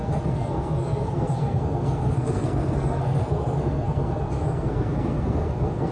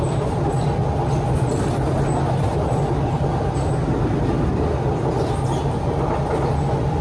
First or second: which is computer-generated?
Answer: first